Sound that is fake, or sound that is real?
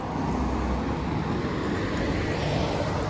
real